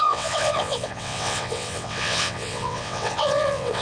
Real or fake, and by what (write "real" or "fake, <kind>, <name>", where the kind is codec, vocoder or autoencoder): fake, vocoder, WaveNeXt